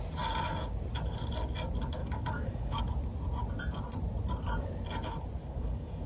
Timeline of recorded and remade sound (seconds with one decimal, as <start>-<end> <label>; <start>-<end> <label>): 0.0-2.0 recorded; 2.0-2.8 remade; 2.8-5.4 recorded; 5.4-6.1 remade